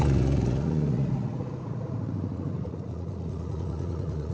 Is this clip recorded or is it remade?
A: remade